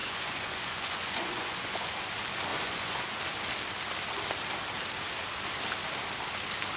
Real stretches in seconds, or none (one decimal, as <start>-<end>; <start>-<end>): 1.9-2.5; 3.0-6.8